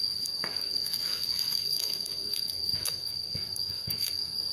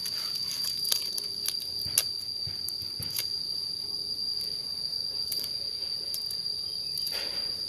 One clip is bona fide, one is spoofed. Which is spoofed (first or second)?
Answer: first